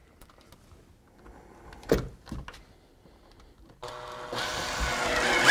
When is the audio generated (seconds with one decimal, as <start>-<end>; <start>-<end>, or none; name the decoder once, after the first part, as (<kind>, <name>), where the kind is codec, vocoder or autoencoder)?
none